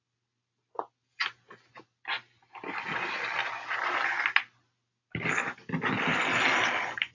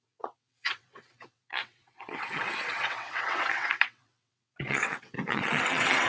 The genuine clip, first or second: first